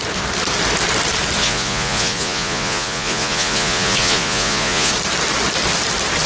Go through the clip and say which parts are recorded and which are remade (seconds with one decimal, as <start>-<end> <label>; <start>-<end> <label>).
0.0-1.4 recorded; 1.4-4.9 remade; 4.9-6.3 recorded